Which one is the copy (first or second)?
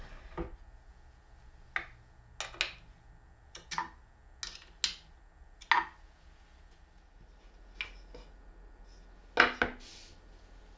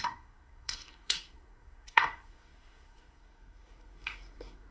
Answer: second